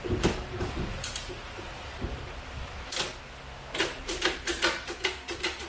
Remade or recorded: recorded